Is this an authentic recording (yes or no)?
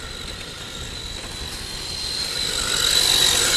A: yes